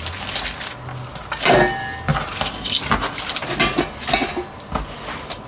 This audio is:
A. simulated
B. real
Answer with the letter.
B